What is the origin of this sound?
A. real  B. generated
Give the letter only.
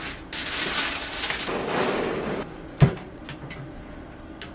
A